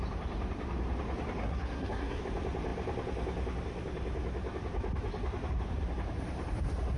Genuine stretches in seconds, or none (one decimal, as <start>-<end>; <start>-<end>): 0.0-1.4; 2.2-7.0